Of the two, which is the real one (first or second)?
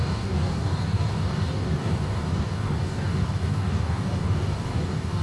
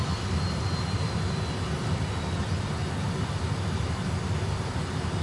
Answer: second